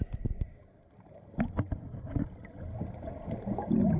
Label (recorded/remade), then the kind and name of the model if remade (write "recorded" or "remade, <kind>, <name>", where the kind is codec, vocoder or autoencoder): recorded